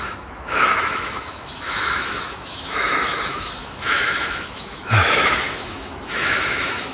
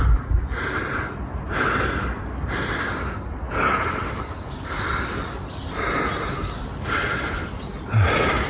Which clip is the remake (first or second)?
first